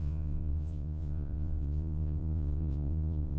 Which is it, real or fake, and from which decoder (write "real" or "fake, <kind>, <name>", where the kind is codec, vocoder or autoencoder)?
fake, vocoder, Vocos